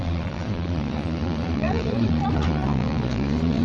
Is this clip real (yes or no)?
no